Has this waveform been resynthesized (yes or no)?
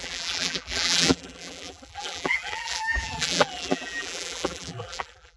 yes